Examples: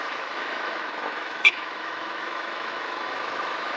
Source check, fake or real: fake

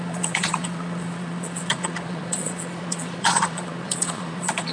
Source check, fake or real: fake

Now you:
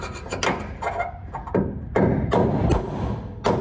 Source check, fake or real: real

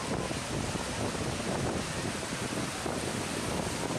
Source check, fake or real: real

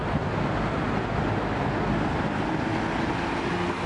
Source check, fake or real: real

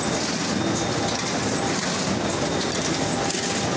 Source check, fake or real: real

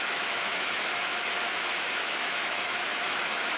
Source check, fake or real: fake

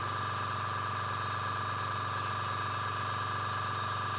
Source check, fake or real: real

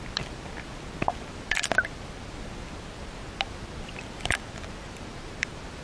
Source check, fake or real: real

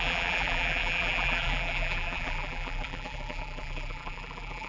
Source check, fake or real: fake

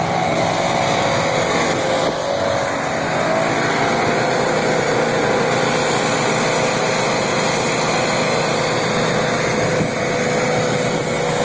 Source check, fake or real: real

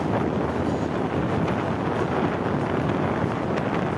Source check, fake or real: real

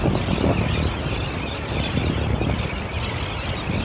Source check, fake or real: real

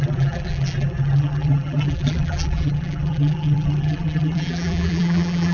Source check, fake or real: fake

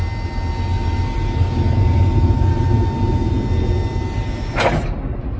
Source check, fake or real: real